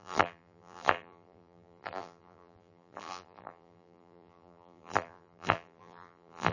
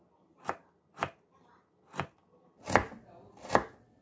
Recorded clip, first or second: second